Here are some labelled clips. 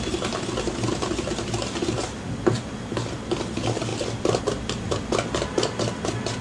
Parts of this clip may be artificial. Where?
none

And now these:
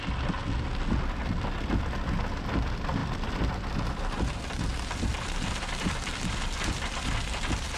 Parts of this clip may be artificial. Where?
3.0-3.6 (vocoder, BigVGAN v2); 5.1-7.8

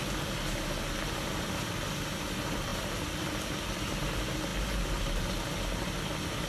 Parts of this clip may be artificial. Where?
2.7-3.6 (vocoder, BigVGAN v2)

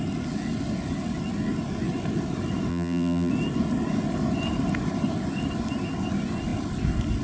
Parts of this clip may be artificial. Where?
2.7-3.3 (vocoder, BigVGAN v2)